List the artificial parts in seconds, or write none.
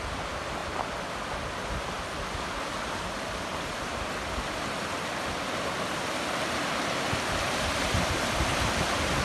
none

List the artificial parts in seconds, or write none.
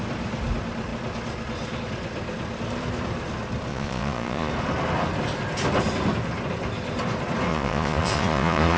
3.7-4.5 (vocoder, Vocos); 7.5-8.8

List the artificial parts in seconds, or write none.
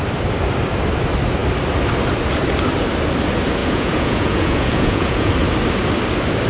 3.6-5.3 (vocoder, Vocos)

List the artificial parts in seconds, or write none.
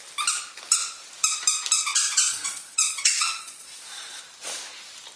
1.9-4.2 (vocoder, Vocos)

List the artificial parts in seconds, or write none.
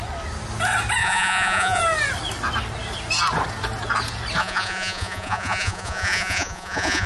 1.0-1.8 (vocoder, Vocos); 4.4-7.1